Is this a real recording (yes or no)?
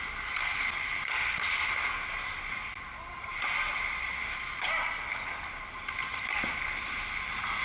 yes